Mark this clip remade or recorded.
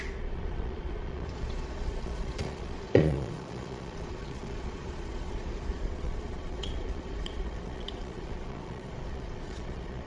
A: remade